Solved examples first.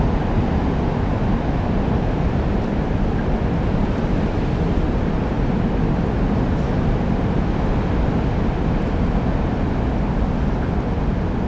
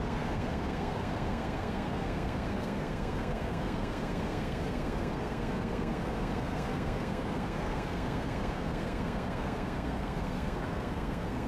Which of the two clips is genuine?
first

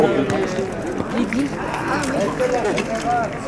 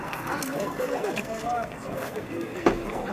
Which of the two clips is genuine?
first